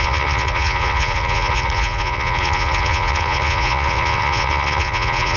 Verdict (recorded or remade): remade